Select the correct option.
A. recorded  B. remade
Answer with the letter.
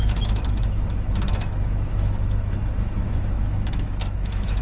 B